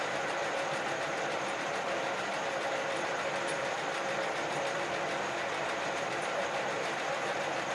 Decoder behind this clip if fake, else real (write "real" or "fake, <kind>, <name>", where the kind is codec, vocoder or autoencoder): fake, vocoder, BigVGAN v2